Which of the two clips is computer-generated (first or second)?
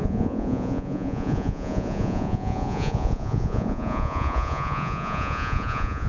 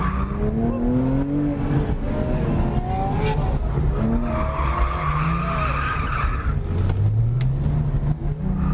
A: first